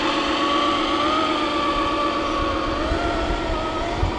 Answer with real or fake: real